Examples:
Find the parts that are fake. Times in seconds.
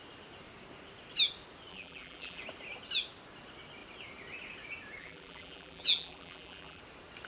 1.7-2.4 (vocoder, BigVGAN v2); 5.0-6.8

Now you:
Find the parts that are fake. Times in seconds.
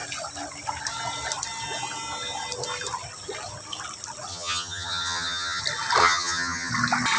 4.3-5.6 (vocoder, HiFi-GAN); 6.0-6.7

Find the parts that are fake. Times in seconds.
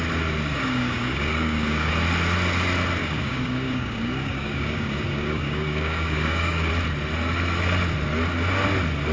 0.5-1.9 (codec, DAC); 3.0-6.7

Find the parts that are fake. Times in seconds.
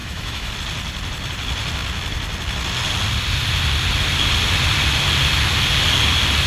0.0-0.5 (autoencoder, DAC-VAE)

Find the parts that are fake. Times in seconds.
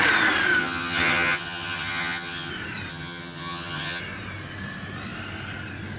0.6-2.5 (vocoder, HiFi-GAN); 2.9-4.0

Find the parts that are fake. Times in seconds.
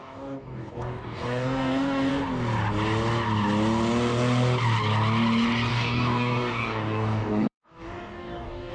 0.0-2.1 (codec, DAC); 5.7-8.7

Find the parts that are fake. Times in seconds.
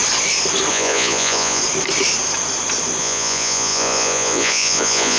0.7-1.6 (vocoder, Vocos); 3.0-5.2